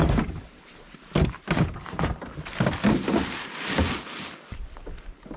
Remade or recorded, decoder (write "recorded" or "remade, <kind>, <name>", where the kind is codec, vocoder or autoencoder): recorded